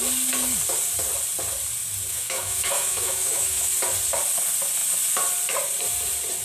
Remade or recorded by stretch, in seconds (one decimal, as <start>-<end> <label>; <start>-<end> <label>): 0.0-2.1 recorded; 2.1-3.7 remade; 3.7-6.4 recorded